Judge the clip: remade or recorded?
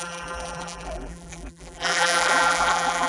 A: remade